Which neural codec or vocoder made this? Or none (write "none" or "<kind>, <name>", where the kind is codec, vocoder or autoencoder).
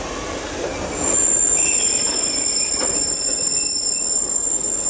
none